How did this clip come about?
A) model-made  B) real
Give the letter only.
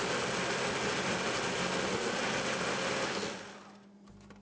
B